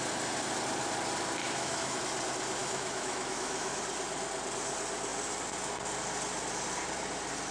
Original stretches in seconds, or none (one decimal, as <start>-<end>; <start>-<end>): 0.0-1.4; 2.0-2.6; 3.8-7.5